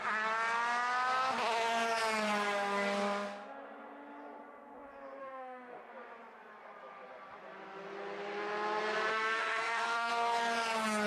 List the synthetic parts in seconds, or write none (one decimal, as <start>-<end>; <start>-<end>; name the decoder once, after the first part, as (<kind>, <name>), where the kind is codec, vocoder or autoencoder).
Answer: 5.2-5.8 (autoencoder, DAC-VAE); 9.1-10.1